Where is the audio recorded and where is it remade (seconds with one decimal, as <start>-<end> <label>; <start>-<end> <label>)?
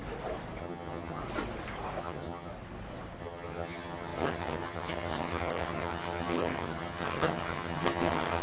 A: 0.0-0.6 recorded; 0.6-1.2 remade; 1.2-2.0 recorded; 2.0-2.5 remade; 2.5-3.2 recorded; 3.2-8.4 remade